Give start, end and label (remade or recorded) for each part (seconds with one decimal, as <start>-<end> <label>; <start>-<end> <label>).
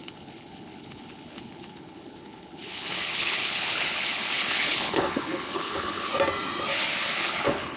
0.0-6.1 remade; 6.1-7.1 recorded; 7.1-7.8 remade